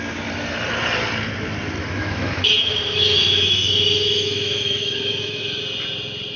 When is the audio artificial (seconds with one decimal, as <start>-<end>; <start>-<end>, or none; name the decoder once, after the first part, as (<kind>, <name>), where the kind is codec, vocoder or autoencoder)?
1.8-5.6 (autoencoder, DAC-VAE)